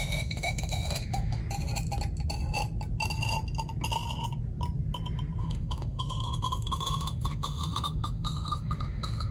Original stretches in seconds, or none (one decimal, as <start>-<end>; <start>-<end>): 1.4-5.4